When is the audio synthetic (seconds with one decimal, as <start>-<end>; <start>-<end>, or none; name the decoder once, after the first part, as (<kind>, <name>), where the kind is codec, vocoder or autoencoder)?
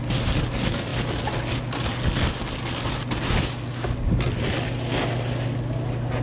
none